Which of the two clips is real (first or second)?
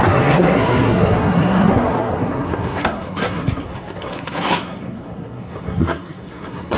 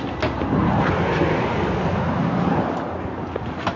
second